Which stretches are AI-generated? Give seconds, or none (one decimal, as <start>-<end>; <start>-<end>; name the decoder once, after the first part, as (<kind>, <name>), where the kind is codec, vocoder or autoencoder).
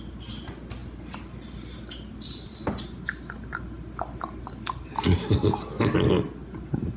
none